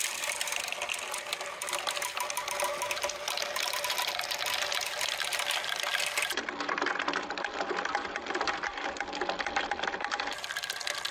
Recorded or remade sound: recorded